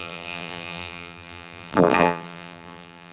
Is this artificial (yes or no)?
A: yes